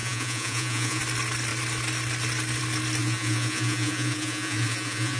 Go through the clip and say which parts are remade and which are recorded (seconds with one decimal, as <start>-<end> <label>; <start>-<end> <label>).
0.0-1.0 remade; 1.0-3.0 recorded; 3.0-5.2 remade